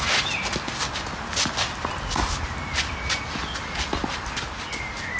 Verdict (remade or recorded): recorded